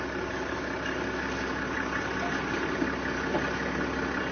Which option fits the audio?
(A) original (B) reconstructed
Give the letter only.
A